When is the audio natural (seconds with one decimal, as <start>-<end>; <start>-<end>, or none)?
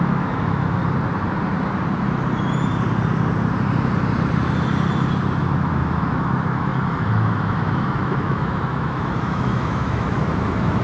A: 0.8-5.4